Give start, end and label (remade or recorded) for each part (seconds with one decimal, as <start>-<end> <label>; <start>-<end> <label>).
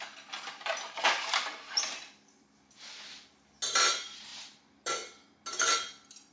0.0-6.3 recorded